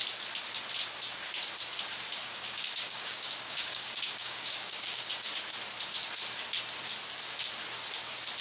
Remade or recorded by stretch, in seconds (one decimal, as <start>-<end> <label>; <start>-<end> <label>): 0.0-2.2 recorded; 2.2-5.1 remade; 5.1-8.4 recorded